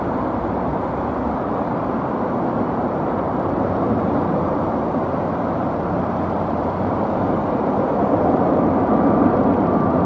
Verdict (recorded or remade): remade